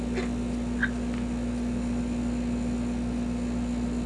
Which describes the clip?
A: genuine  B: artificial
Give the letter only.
A